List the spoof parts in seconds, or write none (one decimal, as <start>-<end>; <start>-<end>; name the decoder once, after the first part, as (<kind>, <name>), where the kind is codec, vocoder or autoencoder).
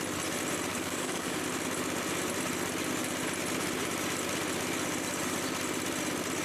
0.7-1.4 (codec, DAC)